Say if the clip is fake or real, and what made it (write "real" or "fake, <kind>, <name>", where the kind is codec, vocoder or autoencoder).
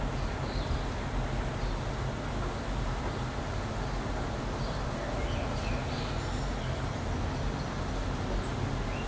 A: real